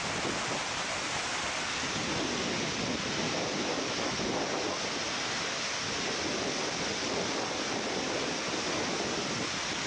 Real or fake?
real